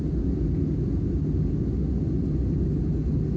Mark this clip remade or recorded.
recorded